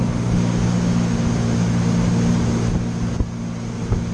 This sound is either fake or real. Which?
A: real